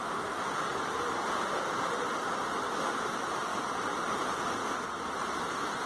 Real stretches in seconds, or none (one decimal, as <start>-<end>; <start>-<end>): 0.0-5.9